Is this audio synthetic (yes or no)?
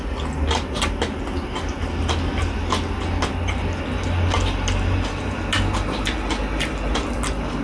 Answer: no